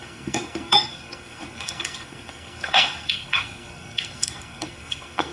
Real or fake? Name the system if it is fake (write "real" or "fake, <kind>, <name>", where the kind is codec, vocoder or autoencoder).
fake, codec, SNAC